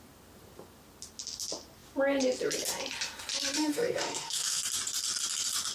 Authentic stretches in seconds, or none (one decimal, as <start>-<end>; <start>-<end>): 0.0-3.6; 4.6-5.7